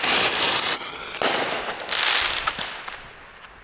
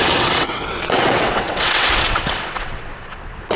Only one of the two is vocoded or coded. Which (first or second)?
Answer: second